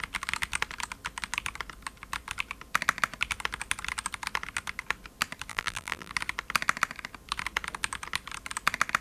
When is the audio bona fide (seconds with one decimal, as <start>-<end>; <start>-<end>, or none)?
0.0-5.5; 6.1-9.0